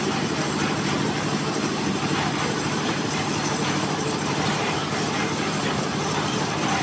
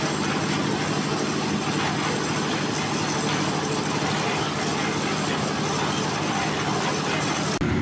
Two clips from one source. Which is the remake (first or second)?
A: first